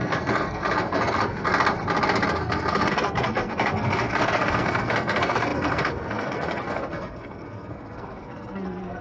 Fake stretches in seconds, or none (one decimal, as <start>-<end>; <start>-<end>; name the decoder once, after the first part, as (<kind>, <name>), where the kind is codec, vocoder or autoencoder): 0.0-1.5 (codec, SNAC); 2.3-9.0